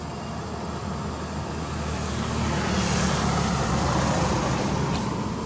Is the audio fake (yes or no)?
no